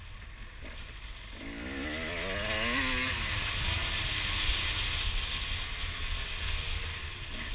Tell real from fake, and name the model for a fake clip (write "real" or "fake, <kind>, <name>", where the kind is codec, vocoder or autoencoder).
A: real